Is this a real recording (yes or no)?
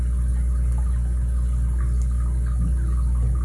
yes